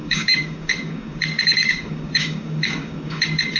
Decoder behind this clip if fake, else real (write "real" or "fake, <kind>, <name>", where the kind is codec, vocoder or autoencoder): fake, codec, DAC